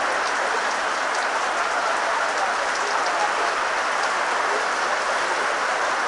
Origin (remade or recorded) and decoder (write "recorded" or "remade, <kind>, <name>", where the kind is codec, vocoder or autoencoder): recorded